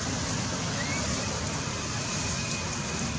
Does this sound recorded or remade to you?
recorded